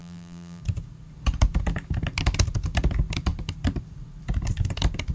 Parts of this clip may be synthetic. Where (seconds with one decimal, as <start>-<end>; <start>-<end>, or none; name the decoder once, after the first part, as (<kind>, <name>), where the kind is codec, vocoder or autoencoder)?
0.0-0.6 (vocoder, BigVGAN v2)